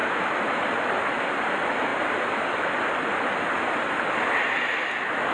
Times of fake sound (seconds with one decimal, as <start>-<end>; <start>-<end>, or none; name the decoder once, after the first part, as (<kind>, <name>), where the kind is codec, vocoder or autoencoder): 1.9-5.3 (vocoder, BigVGAN v2)